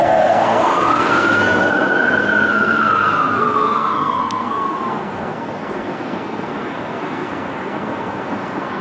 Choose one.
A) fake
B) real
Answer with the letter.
A